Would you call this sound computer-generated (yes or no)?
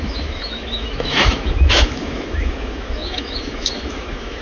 yes